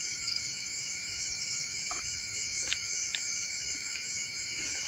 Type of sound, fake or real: fake